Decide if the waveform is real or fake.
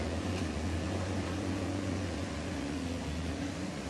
fake